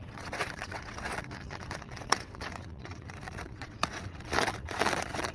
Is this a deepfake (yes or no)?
yes